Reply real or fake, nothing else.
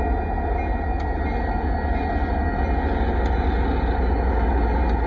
real